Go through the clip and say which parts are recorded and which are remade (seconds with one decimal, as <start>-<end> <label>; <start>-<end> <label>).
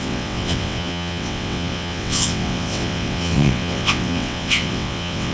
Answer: 0.0-5.3 remade